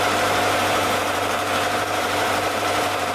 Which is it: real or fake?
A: fake